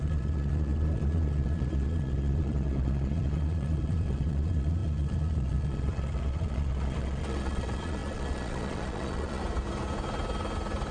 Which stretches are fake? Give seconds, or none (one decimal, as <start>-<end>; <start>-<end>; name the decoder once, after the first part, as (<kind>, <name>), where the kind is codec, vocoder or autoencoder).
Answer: 0.0-9.4 (vocoder, Vocos)